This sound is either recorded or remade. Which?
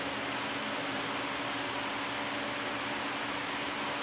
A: recorded